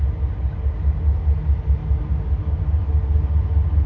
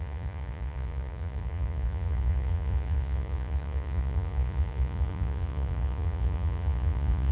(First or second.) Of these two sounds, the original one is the first